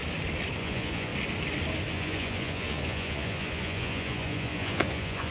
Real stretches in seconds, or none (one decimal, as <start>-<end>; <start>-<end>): 0.0-0.6; 1.1-1.9